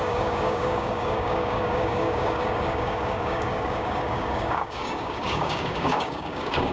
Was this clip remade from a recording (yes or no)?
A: yes